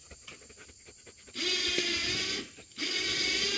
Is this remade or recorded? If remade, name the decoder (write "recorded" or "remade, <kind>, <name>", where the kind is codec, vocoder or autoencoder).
recorded